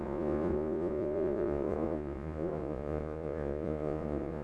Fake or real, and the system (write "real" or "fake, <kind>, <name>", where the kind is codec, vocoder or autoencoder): fake, vocoder, Vocos